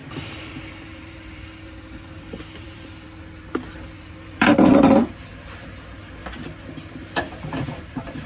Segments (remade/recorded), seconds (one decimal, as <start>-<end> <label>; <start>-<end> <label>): 0.0-6.2 remade; 6.2-6.9 recorded; 6.9-8.3 remade